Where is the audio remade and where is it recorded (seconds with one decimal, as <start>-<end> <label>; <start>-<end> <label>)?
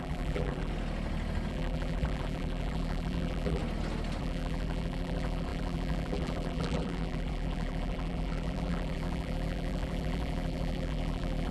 0.0-0.7 remade; 0.7-1.5 recorded; 1.5-3.6 remade; 3.6-4.2 recorded; 4.2-11.5 remade